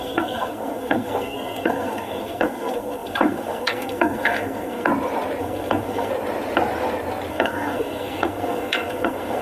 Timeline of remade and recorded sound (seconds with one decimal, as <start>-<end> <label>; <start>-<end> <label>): 0.0-4.9 remade; 4.9-5.4 recorded; 5.4-6.1 remade; 6.1-7.3 recorded; 7.3-9.4 remade